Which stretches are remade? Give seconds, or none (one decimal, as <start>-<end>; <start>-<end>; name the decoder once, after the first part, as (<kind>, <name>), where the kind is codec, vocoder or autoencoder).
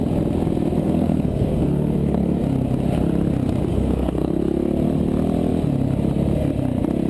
0.8-2.4 (codec, SNAC); 3.7-4.3